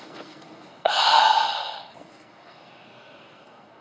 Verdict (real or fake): fake